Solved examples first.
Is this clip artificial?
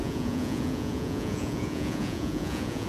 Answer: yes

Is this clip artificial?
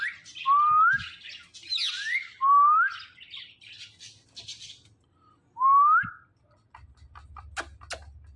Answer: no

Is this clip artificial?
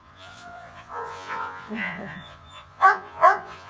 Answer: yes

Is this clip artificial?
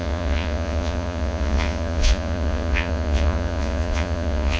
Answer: yes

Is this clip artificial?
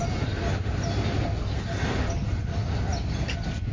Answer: no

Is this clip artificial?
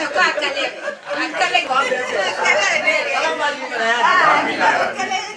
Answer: yes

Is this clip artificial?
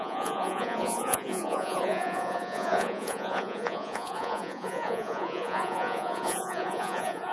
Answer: yes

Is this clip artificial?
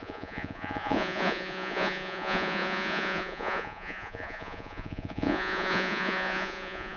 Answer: yes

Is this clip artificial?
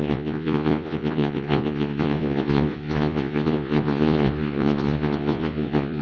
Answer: yes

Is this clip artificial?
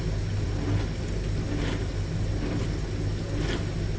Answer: no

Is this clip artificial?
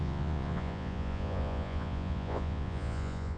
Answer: yes